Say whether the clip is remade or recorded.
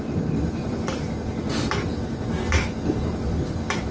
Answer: recorded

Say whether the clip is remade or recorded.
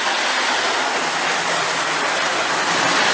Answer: recorded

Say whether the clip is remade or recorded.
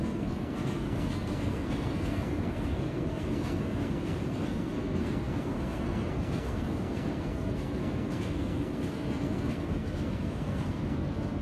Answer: remade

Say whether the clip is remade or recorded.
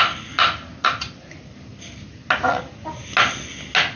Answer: recorded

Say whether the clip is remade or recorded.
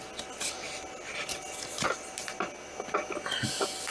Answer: recorded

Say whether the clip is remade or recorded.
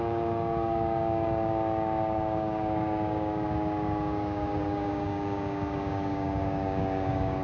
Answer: remade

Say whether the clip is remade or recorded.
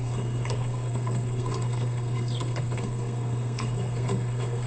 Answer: remade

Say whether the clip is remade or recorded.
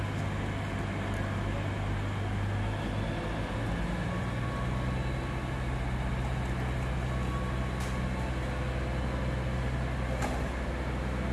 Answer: recorded